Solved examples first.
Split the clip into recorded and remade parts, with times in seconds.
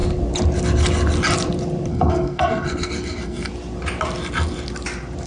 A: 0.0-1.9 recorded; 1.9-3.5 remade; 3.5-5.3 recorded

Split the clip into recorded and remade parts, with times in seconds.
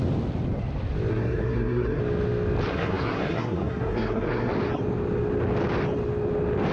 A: 0.0-1.1 recorded; 1.1-2.0 remade; 2.0-2.7 recorded; 2.7-4.5 remade; 4.5-6.7 recorded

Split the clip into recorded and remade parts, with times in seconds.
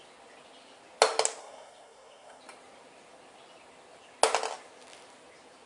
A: 0.0-1.4 recorded; 1.4-2.4 remade; 2.4-5.7 recorded